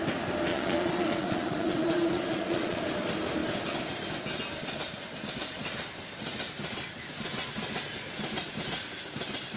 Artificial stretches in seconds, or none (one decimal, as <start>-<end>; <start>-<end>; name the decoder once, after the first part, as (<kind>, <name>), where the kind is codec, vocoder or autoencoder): 0.5-2.8 (vocoder, Vocos)